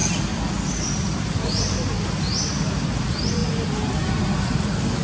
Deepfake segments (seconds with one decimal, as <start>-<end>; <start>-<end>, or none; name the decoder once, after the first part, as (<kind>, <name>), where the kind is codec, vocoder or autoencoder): none